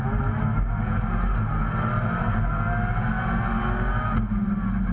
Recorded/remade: recorded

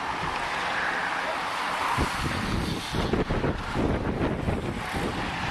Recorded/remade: recorded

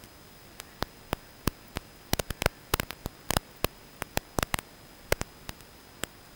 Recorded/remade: recorded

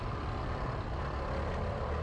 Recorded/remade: recorded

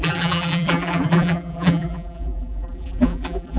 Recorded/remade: remade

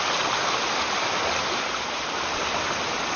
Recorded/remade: recorded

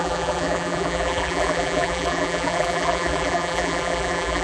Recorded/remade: remade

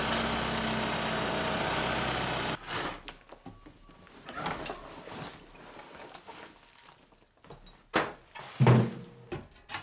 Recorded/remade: recorded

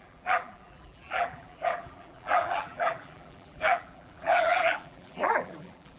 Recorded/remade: remade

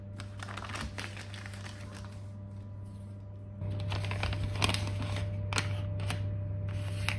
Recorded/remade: recorded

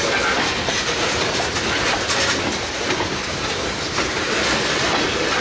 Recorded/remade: remade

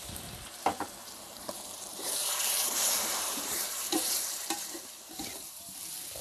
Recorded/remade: remade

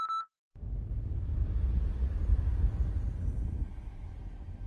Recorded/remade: remade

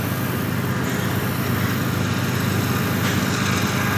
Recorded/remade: recorded